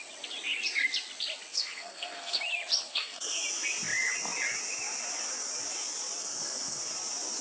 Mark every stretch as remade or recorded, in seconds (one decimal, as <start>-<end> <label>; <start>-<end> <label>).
0.0-1.5 recorded; 1.5-2.4 remade; 2.4-2.9 recorded; 2.9-3.4 remade; 3.4-6.2 recorded; 6.2-6.8 remade; 6.8-7.4 recorded